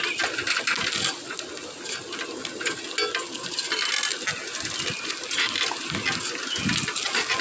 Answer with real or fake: real